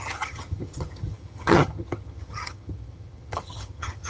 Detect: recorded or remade remade